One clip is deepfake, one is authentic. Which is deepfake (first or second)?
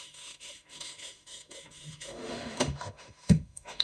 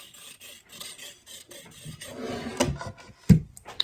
first